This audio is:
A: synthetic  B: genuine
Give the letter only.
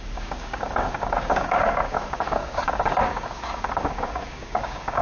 A